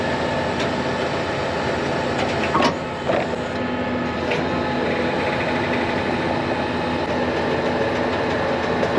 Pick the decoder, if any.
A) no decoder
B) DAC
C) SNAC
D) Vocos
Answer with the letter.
A